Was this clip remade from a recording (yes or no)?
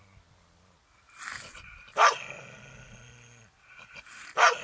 no